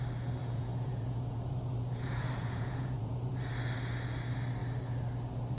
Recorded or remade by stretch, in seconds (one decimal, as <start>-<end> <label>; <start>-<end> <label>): 0.0-0.4 recorded; 0.4-3.4 remade; 3.4-5.6 recorded